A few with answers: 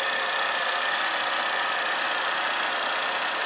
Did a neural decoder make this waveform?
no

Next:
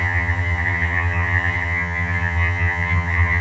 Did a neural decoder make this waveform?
yes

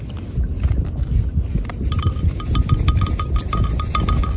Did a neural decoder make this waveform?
no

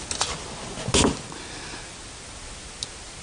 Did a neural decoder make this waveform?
no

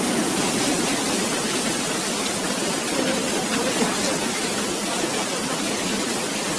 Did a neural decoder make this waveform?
no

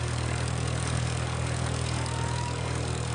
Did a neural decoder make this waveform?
yes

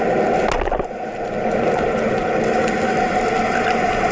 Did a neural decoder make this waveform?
no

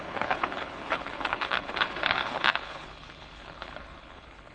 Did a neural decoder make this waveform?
yes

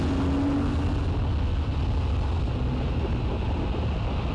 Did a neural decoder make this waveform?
no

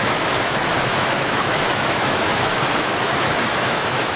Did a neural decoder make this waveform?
yes